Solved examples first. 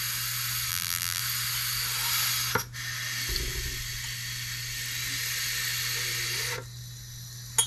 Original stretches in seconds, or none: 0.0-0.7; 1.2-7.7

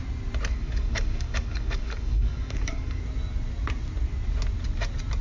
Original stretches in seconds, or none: 0.0-0.5; 3.0-5.2

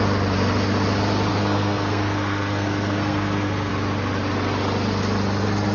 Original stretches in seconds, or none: 0.0-1.3; 3.7-5.7

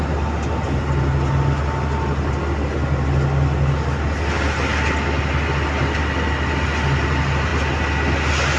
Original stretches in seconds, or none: 0.0-8.6

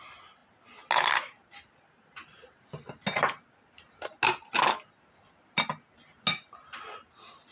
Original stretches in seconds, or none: 0.0-7.5